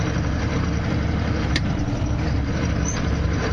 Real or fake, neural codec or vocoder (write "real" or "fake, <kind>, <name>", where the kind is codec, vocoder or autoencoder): fake, vocoder, BigVGAN v2